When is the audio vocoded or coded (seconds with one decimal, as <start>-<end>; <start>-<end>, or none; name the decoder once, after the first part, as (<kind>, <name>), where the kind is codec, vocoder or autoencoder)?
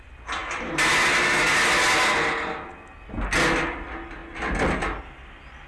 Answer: none